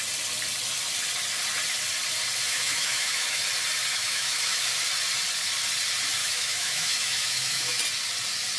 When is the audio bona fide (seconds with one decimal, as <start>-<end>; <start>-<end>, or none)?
0.0-2.5; 3.4-3.9; 4.7-6.2; 7.8-8.6